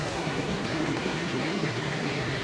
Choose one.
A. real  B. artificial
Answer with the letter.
B